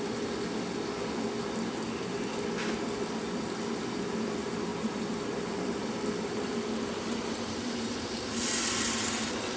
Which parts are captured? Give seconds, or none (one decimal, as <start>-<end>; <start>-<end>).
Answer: 0.0-4.7; 8.1-9.6